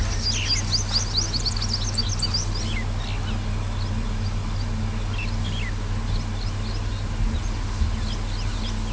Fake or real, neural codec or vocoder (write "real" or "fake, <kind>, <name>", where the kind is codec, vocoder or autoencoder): real